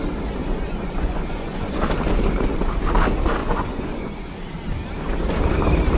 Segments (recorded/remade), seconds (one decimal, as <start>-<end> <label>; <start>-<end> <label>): 0.0-0.4 recorded; 0.4-1.8 remade; 1.8-3.4 recorded; 3.4-4.3 remade; 4.3-6.0 recorded